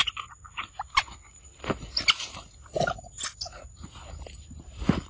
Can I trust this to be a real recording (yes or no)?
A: yes